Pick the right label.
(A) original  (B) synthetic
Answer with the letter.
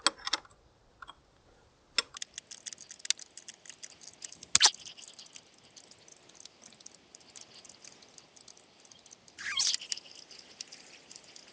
A